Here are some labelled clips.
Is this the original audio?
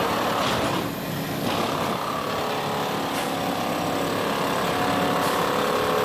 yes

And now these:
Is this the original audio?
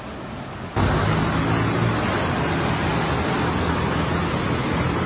yes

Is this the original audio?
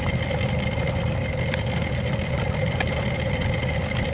yes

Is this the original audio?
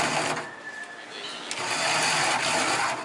yes